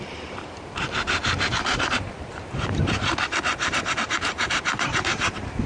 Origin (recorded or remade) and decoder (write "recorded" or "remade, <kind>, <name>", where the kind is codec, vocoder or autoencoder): remade, vocoder, BigVGAN v2